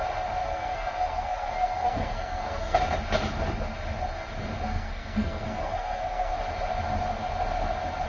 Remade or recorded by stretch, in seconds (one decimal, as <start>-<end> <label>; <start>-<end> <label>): 0.0-0.4 recorded; 0.4-2.8 remade; 2.8-4.7 recorded; 4.7-6.3 remade; 6.3-8.1 recorded